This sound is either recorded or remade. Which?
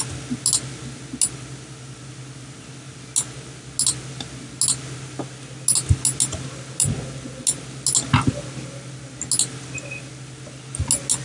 recorded